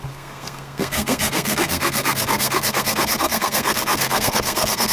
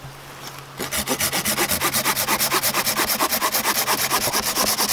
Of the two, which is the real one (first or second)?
second